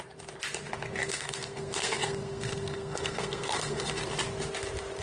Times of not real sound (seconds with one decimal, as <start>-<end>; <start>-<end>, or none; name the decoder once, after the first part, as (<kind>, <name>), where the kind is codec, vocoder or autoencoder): 1.0-4.0 (codec, SNAC)